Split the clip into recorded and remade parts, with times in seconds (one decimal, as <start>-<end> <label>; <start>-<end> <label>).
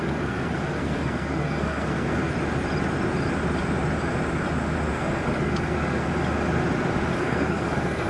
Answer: 0.0-2.2 remade; 2.2-4.9 recorded; 4.9-6.1 remade; 6.1-7.2 recorded; 7.2-8.1 remade